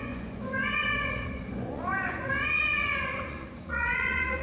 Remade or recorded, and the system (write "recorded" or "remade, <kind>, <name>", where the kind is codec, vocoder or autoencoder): remade, vocoder, Vocos